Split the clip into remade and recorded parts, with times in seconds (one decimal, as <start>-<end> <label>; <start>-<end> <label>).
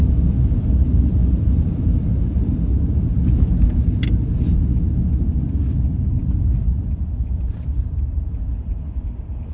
0.0-0.6 recorded; 0.6-1.2 remade; 1.2-5.9 recorded; 5.9-9.5 remade